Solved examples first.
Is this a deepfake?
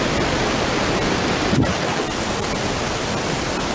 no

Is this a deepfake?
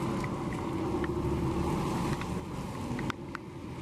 no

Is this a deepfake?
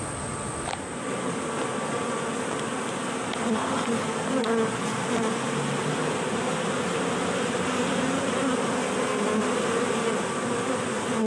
no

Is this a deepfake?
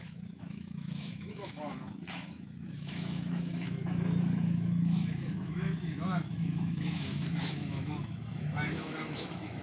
yes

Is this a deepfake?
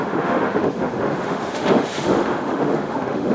yes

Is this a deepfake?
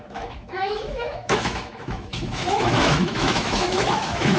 yes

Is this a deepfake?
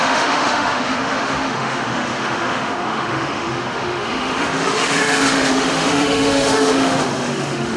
yes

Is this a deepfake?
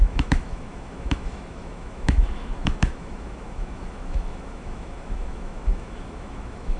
yes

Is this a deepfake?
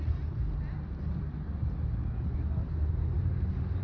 no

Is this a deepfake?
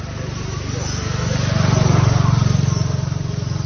no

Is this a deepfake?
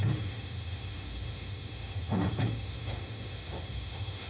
yes